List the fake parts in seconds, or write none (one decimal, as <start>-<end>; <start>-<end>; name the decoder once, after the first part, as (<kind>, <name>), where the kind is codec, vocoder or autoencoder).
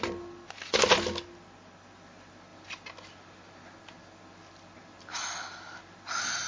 none